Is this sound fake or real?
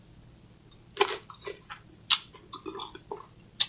real